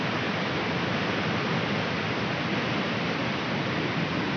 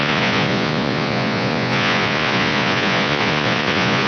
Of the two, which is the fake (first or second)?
second